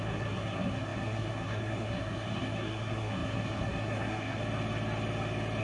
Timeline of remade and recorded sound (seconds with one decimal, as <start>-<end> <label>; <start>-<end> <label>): 0.0-4.4 remade; 4.4-5.6 recorded